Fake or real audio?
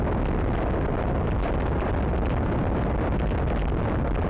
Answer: real